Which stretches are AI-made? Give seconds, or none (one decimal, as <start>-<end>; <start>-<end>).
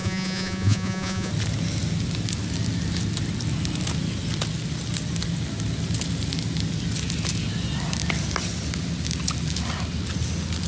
0.0-1.3